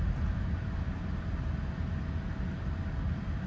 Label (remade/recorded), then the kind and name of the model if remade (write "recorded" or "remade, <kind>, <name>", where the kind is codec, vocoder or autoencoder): recorded